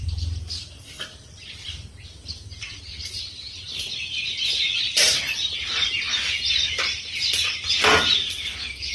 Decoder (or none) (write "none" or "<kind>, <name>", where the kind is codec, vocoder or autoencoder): vocoder, BigVGAN v2